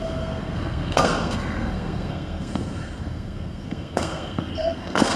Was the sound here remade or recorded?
remade